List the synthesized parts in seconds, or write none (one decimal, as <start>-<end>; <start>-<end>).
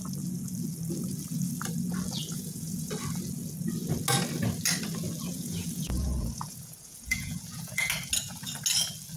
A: 2.2-2.9; 5.3-7.9